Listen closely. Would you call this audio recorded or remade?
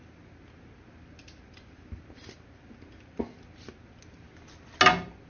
recorded